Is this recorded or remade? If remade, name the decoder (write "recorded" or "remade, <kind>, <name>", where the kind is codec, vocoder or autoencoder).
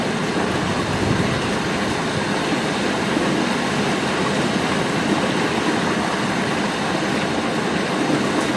recorded